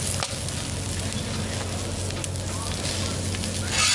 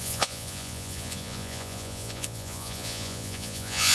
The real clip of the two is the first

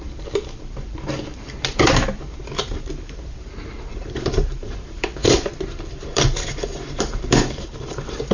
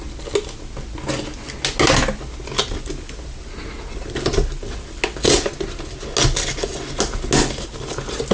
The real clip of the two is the second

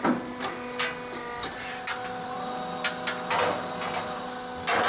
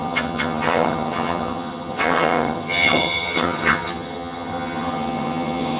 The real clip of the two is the first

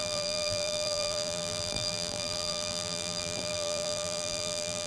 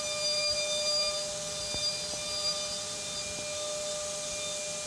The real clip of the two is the second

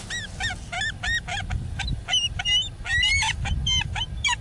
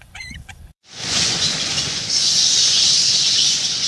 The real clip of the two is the first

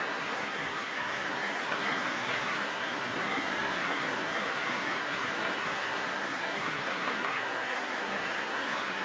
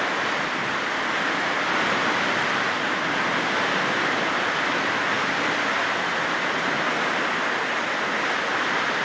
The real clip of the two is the second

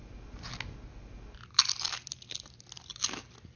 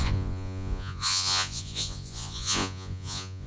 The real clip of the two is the first